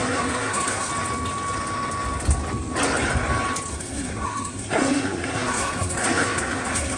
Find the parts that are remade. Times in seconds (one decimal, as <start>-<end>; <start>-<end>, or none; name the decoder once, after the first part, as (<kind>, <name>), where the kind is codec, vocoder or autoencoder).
0.0-0.9 (codec, SNAC); 3.7-7.0